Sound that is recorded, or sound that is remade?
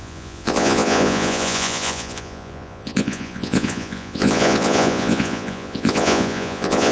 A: remade